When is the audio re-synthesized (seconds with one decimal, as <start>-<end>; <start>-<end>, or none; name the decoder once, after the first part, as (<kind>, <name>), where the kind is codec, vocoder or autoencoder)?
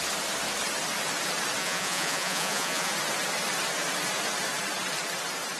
1.6-2.9 (vocoder, Vocos)